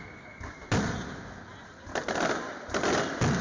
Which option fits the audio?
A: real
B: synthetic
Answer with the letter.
A